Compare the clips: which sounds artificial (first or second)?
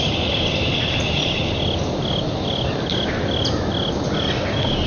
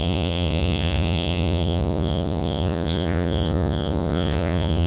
second